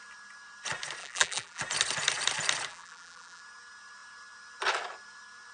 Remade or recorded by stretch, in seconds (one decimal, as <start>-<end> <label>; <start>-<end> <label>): 0.0-1.0 recorded; 1.0-1.6 remade; 1.6-2.7 recorded; 2.7-3.4 remade; 3.4-5.5 recorded